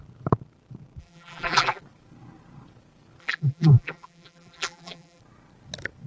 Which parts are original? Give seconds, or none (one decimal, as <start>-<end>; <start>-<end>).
0.0-1.0; 1.8-3.2; 5.2-6.1